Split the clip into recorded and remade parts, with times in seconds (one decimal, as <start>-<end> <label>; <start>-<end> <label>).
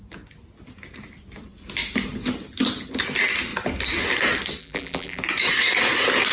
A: 0.0-4.6 recorded; 4.6-5.2 remade; 5.2-6.3 recorded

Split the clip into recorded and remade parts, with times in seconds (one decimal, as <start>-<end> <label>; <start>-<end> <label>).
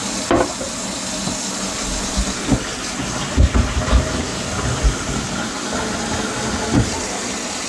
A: 0.0-7.7 recorded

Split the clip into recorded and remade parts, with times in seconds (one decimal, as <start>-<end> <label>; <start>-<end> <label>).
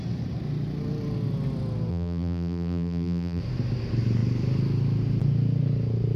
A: 0.0-1.9 recorded; 1.9-3.4 remade; 3.4-6.2 recorded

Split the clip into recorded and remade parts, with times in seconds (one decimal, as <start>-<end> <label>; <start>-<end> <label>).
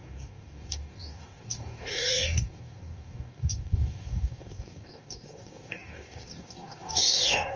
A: 0.0-7.6 remade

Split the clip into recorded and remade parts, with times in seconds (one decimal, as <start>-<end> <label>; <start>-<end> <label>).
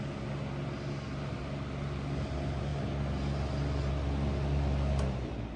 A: 0.0-5.6 recorded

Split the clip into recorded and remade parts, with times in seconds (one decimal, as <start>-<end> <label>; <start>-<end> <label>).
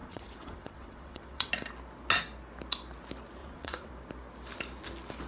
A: 0.0-1.5 remade; 1.5-3.4 recorded; 3.4-3.9 remade; 3.9-5.3 recorded